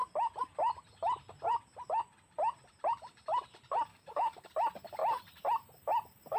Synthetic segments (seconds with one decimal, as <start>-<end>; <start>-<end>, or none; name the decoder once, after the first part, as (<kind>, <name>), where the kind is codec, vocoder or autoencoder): 3.9-4.5 (codec, DAC)